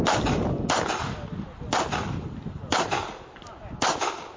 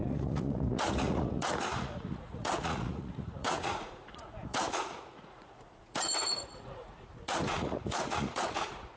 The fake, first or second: second